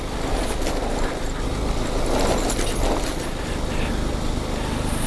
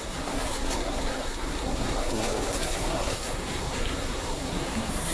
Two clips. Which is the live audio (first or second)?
first